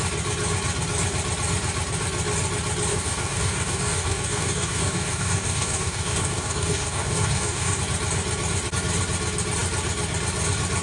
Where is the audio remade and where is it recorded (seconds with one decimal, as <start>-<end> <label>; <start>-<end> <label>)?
0.0-2.9 recorded; 2.9-7.8 remade; 7.8-10.8 recorded